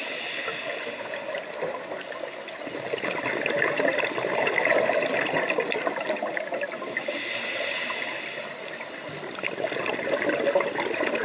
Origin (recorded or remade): recorded